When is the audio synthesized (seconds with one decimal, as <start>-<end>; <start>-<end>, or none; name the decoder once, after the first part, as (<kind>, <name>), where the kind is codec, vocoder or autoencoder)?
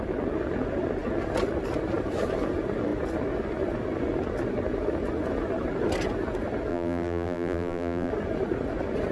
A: 6.7-8.1 (vocoder, BigVGAN v2)